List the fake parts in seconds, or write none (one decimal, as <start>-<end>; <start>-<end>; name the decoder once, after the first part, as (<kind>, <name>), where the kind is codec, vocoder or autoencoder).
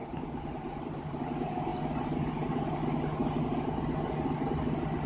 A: 0.0-1.2 (vocoder, BigVGAN v2)